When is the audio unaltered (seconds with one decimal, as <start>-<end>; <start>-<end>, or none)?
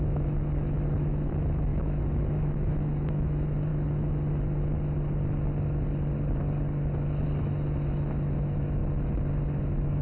3.7-7.9; 8.8-9.6